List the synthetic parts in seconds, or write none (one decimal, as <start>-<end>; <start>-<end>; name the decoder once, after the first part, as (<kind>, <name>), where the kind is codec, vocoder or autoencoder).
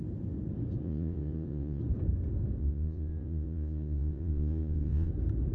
0.8-1.8 (vocoder, Vocos); 2.6-5.1